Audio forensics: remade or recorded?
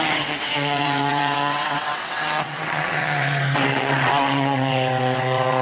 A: remade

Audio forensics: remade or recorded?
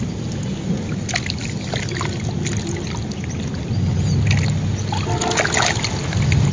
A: recorded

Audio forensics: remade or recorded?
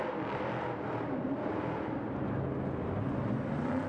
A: recorded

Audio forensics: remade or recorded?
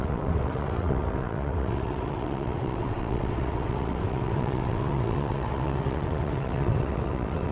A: remade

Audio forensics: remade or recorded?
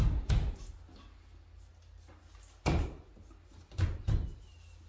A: recorded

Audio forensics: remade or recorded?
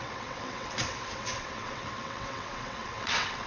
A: remade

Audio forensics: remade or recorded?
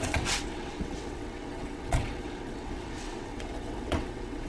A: remade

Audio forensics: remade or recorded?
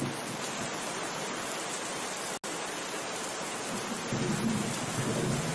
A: recorded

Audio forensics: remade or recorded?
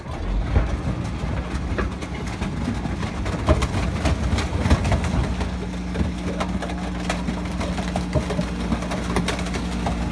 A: recorded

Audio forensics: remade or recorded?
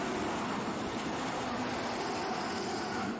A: recorded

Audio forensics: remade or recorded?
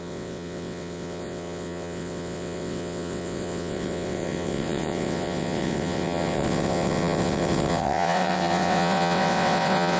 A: remade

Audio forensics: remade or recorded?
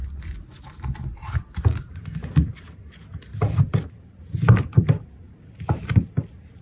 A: recorded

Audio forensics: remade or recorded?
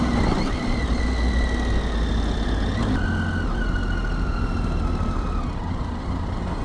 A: recorded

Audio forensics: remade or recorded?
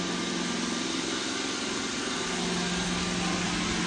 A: recorded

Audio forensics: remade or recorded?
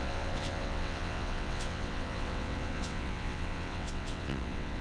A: remade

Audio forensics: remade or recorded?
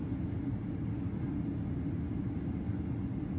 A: recorded